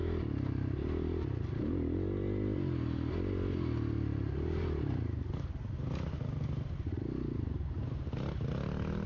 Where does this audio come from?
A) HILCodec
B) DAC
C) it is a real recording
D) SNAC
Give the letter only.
C